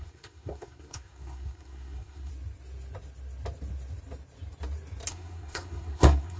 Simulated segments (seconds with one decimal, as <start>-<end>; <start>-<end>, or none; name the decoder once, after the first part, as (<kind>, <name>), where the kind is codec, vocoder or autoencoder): 0.0-2.3 (codec, SNAC); 5.1-6.4